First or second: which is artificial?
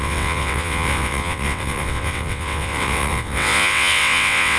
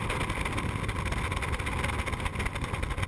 first